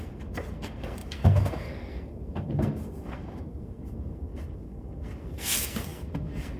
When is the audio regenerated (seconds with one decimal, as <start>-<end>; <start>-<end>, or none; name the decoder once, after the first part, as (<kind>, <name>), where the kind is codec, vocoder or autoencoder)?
0.0-6.6 (codec, SNAC)